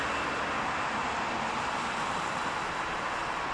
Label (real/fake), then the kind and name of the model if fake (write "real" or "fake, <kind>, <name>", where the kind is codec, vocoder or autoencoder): real